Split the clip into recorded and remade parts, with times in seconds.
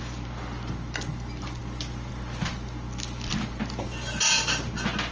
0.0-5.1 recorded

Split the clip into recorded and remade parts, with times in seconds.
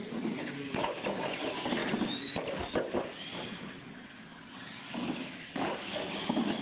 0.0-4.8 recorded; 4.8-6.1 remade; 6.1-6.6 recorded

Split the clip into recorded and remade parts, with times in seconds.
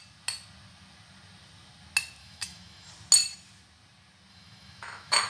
0.0-2.2 recorded; 2.2-2.9 remade; 2.9-4.3 recorded; 4.3-5.3 remade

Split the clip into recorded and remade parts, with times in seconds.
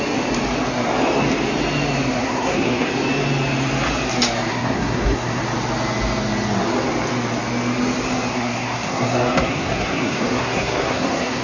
0.0-2.2 recorded; 2.2-2.9 remade; 2.9-4.5 recorded; 4.5-5.4 remade; 5.4-8.3 recorded; 8.3-11.4 remade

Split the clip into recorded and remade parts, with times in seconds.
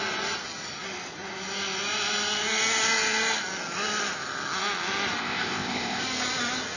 0.0-5.2 recorded; 5.2-6.0 remade; 6.0-6.8 recorded